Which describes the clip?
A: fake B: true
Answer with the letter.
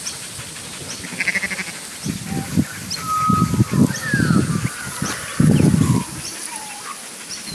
B